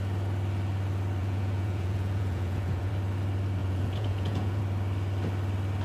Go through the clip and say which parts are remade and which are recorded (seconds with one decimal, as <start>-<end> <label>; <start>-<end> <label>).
0.0-1.2 recorded; 1.2-2.9 remade; 2.9-3.6 recorded; 3.6-4.6 remade; 4.6-5.8 recorded